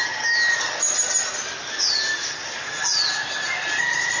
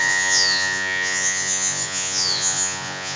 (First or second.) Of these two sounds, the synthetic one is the second